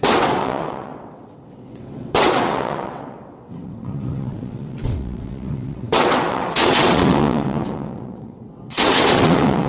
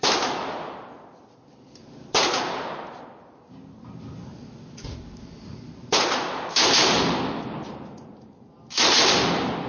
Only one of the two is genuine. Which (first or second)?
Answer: second